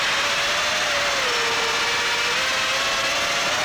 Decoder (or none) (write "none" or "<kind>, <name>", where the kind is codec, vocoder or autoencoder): none